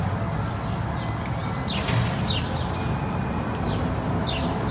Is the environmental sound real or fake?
real